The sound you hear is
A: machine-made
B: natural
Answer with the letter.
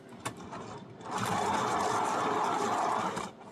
B